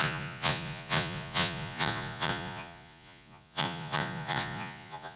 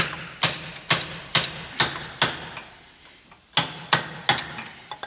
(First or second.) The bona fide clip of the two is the second